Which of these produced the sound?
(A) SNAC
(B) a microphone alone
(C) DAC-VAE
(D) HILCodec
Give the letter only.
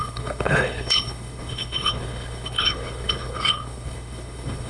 D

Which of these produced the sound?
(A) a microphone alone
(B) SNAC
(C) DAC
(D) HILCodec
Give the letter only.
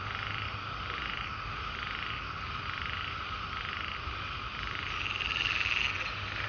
A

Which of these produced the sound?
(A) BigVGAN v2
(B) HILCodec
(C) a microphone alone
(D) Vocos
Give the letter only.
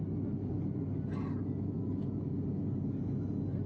C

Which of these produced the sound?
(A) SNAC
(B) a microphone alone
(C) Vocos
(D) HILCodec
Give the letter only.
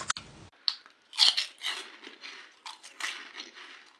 B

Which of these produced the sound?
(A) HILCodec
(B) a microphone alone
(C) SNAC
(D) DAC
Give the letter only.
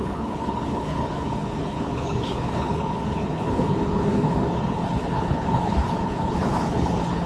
A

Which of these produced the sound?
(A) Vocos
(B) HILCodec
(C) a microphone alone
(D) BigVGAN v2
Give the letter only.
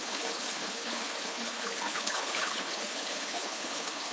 B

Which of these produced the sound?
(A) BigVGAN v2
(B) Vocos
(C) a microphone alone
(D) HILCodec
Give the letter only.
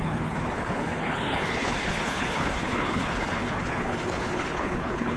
D